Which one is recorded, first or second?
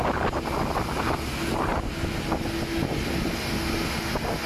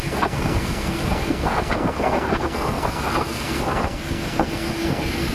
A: first